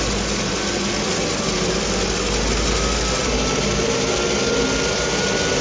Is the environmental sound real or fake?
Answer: real